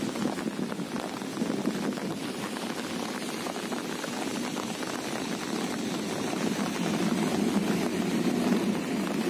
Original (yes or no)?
yes